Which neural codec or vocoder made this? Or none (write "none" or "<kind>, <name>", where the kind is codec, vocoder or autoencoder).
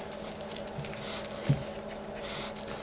none